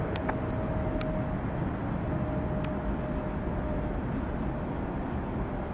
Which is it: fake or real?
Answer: real